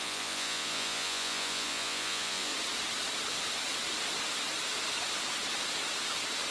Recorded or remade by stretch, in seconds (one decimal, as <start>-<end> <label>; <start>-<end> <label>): 0.0-2.5 remade; 2.5-6.5 recorded